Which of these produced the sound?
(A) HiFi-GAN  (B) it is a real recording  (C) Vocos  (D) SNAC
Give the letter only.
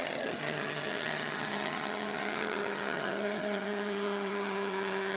A